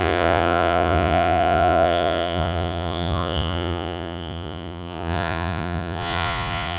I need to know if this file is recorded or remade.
remade